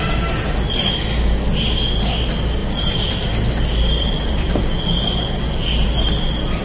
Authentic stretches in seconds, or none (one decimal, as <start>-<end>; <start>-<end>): 0.0-2.6; 4.5-6.6